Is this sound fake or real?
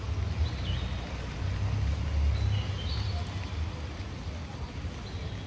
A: real